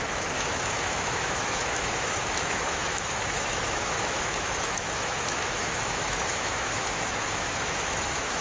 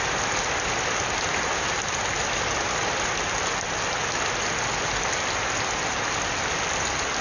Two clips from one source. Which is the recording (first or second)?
second